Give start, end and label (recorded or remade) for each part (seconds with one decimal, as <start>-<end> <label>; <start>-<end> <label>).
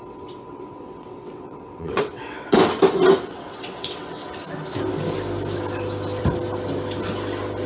0.0-2.6 remade; 2.6-3.2 recorded; 3.2-4.2 remade; 4.2-7.7 recorded